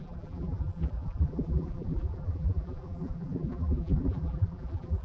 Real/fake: fake